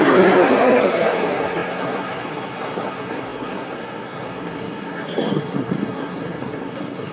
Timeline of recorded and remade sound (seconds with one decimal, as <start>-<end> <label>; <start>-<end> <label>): 0.0-7.1 remade